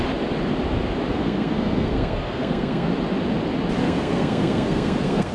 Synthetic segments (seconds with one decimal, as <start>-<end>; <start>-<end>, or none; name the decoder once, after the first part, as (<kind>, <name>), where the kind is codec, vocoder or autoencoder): 1.1-2.9 (codec, SNAC); 3.8-5.3